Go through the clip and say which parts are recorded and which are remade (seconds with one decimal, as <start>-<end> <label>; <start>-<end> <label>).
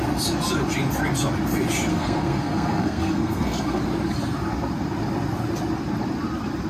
0.0-1.9 recorded; 1.9-3.8 remade; 3.8-6.7 recorded